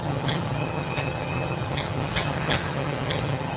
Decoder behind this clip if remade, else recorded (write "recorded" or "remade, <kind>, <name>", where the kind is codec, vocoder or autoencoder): remade, vocoder, HiFi-GAN